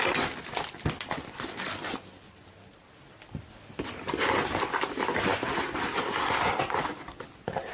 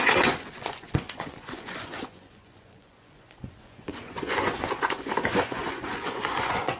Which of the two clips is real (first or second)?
first